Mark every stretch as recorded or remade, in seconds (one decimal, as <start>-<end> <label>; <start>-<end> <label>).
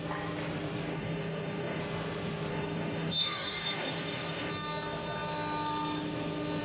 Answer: 0.0-0.9 recorded; 0.9-1.8 remade; 1.8-2.5 recorded; 2.5-4.5 remade; 4.5-6.6 recorded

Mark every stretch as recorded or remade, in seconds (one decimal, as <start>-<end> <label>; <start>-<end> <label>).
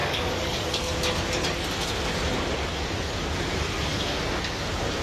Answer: 0.0-0.9 remade; 0.9-5.0 recorded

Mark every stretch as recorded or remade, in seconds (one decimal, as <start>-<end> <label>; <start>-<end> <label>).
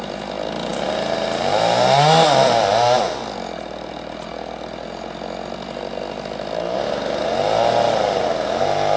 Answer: 0.0-9.0 recorded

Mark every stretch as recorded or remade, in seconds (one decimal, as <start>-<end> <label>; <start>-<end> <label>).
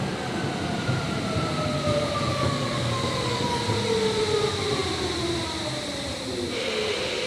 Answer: 0.0-2.3 recorded; 2.3-3.6 remade; 3.6-7.3 recorded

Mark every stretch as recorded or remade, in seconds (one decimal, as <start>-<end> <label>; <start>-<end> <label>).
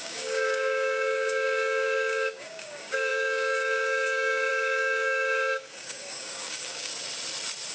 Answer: 0.0-6.9 remade; 6.9-7.7 recorded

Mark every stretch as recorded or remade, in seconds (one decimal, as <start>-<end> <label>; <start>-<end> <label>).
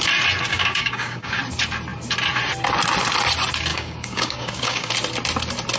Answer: 0.0-0.5 recorded; 0.5-1.4 remade; 1.4-3.7 recorded; 3.7-4.9 remade; 4.9-5.8 recorded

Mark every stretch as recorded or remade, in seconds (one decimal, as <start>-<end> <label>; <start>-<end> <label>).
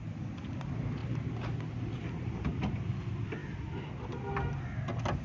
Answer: 0.0-5.2 recorded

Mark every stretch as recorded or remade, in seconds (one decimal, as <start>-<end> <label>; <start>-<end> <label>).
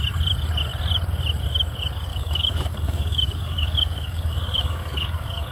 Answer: 0.0-2.1 recorded; 2.1-5.5 remade